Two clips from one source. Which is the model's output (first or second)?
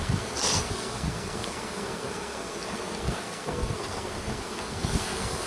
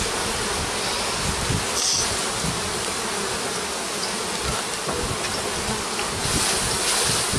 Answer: first